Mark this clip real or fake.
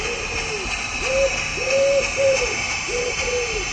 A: real